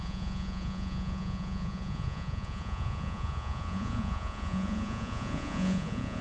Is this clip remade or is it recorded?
remade